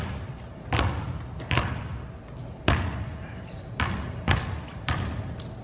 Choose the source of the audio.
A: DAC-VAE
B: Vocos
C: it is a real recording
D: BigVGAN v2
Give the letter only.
C